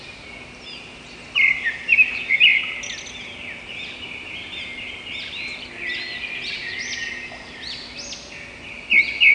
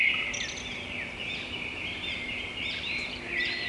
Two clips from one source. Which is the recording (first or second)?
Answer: first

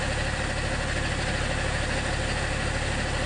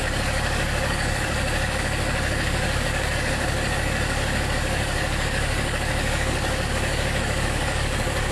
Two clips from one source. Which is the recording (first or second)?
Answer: first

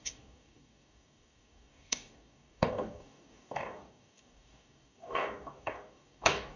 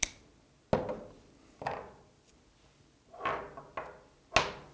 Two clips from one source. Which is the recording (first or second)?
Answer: second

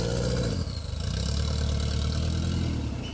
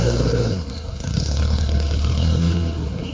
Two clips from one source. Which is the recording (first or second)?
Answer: first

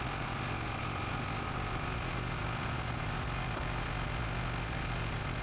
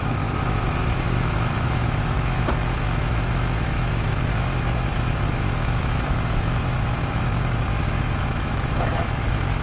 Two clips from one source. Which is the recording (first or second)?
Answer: first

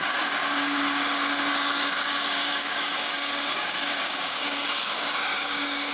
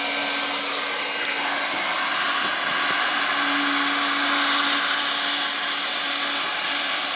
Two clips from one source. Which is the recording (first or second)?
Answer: second